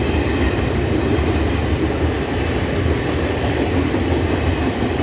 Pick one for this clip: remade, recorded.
recorded